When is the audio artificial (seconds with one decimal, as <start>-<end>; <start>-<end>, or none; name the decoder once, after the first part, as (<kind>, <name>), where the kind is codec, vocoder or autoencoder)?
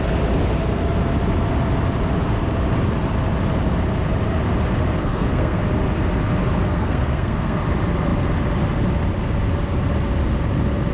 5.0-5.6 (codec, SNAC); 6.7-7.6